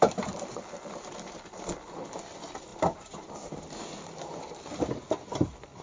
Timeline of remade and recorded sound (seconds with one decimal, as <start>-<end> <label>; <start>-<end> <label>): 0.0-2.7 recorded; 2.7-4.8 remade; 4.8-5.8 recorded